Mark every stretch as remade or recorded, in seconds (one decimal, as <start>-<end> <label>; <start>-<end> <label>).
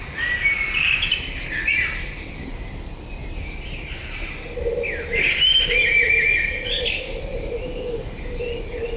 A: 0.0-9.0 recorded